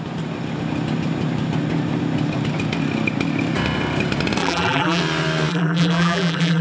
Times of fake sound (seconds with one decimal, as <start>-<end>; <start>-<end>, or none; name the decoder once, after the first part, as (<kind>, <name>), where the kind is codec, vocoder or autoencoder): 4.4-5.0 (vocoder, BigVGAN v2); 5.5-6.6